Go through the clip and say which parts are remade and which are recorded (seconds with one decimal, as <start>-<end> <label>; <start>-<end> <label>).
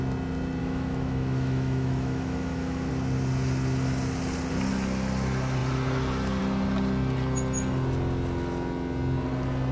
0.0-0.6 recorded; 0.6-2.9 remade; 2.9-9.7 recorded